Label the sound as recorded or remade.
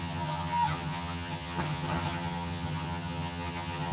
remade